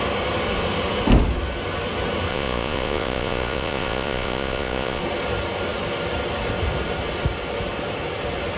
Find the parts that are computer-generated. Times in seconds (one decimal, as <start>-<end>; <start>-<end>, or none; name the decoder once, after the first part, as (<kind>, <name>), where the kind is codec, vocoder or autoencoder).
2.3-5.0 (vocoder, Vocos)